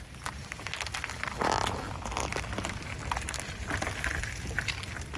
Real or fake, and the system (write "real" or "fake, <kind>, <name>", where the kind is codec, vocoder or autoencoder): real